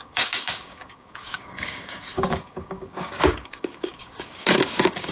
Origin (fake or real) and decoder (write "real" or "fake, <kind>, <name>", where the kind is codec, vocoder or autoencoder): fake, codec, DAC